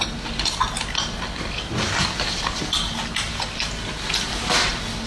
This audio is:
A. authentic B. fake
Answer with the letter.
A